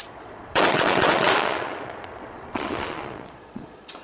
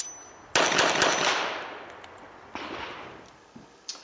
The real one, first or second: second